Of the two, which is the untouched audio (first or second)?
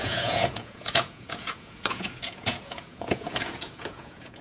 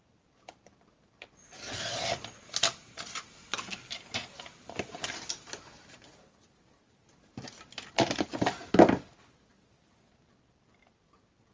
second